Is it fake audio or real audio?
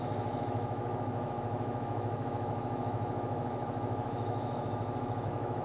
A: fake